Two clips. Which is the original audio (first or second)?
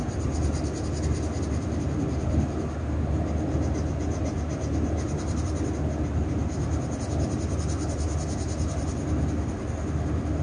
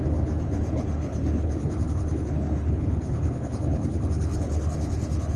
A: first